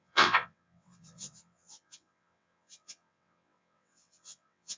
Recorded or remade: remade